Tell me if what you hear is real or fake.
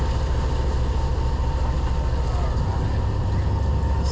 real